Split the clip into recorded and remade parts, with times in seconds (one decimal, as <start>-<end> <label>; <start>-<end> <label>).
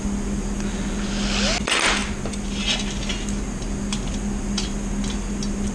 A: 0.0-5.7 recorded